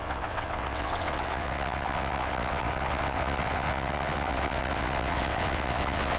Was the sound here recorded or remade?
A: remade